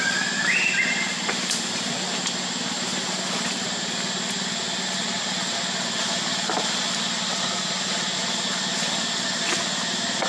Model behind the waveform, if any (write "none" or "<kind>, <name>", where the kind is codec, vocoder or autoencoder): none